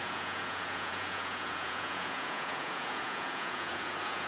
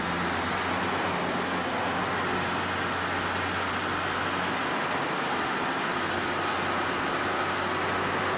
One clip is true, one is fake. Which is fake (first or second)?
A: first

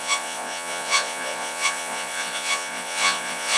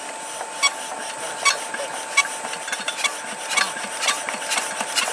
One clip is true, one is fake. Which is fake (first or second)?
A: first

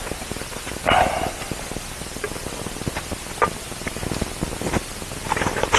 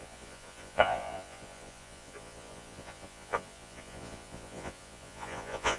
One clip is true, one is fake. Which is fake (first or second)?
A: second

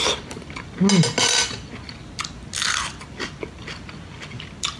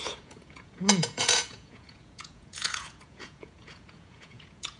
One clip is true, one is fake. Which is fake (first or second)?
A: second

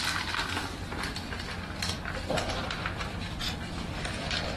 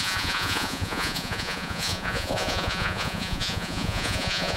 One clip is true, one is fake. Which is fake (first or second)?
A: second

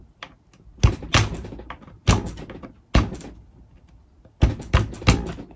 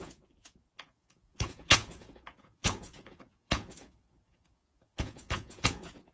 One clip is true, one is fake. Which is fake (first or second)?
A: second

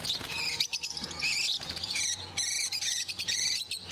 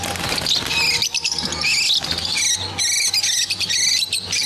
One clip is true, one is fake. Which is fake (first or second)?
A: first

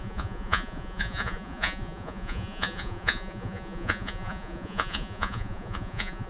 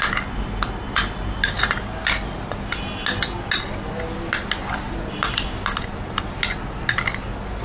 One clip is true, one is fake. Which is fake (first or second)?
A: first